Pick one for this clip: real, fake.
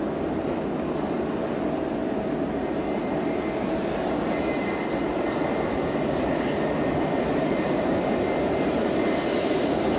real